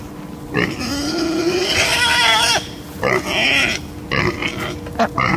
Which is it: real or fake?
real